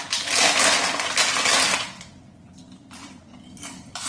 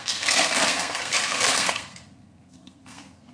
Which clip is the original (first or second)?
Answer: first